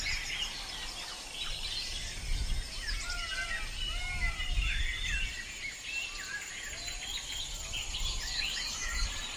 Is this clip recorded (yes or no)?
yes